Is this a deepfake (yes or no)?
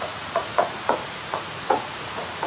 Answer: yes